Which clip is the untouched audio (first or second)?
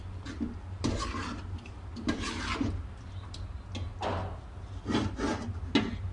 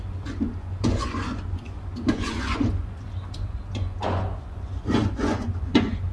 first